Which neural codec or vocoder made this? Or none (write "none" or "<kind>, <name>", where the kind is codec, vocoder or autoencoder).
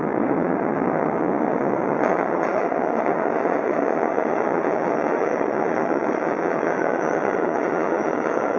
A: vocoder, Vocos